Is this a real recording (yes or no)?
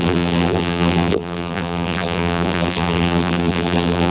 no